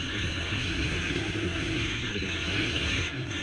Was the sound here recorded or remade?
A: remade